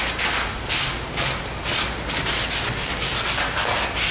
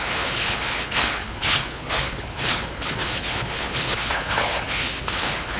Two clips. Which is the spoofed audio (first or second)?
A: second